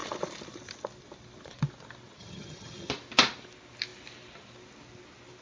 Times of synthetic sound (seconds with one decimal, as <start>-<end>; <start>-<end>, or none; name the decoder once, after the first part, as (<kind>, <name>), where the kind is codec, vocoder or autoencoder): 2.2-2.9 (vocoder, HiFi-GAN)